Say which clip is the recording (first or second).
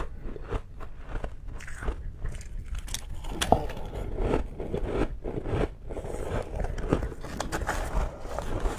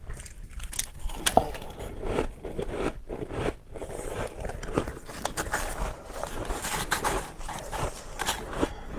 first